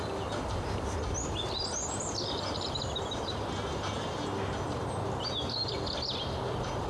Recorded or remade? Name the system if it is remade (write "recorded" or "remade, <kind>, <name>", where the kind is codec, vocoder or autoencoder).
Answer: recorded